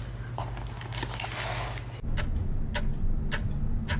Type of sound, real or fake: real